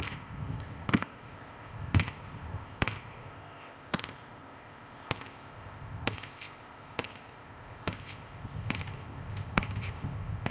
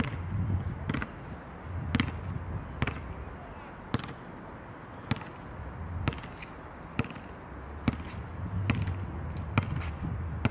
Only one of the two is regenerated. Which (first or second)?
first